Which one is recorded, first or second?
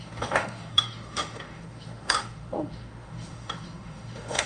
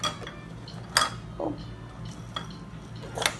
second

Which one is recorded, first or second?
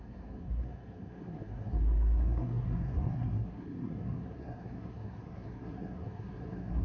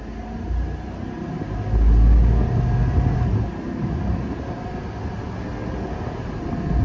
second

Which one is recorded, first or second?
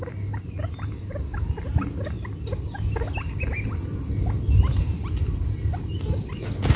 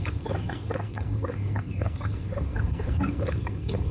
first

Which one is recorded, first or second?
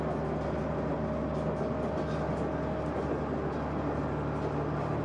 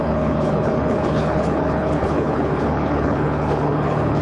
first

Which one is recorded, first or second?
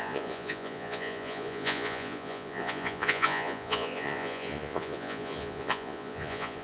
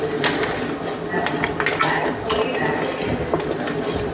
second